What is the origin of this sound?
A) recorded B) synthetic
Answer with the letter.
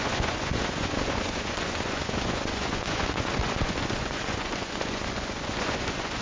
B